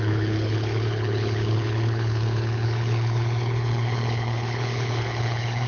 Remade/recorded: remade